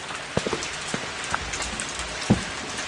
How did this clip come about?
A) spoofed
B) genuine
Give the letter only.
B